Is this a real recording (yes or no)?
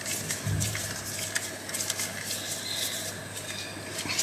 yes